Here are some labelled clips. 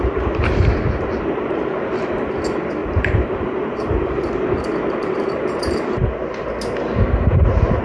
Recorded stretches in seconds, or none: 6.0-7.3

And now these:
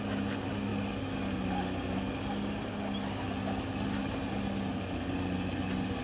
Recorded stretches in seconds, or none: 0.0-6.0

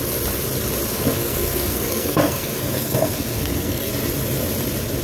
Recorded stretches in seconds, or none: 0.0-0.9; 3.9-5.0

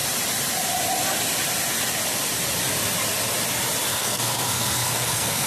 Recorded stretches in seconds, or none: 0.0-3.9